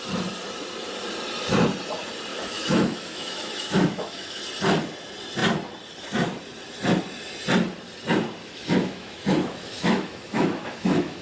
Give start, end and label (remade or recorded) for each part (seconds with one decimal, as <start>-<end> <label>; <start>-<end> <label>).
0.0-2.3 recorded; 2.3-4.4 remade; 4.4-8.4 recorded; 8.4-11.2 remade